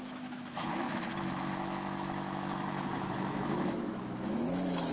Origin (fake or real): fake